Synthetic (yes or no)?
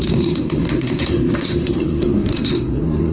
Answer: yes